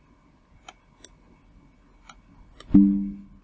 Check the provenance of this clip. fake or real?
real